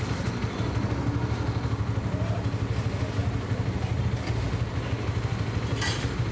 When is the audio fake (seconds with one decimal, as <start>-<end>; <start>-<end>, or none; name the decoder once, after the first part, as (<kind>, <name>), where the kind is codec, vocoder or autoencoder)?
none